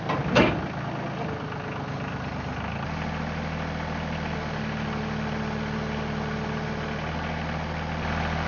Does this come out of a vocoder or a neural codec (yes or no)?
no